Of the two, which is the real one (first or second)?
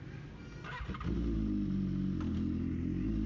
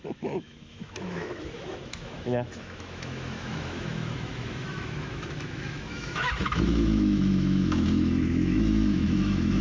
first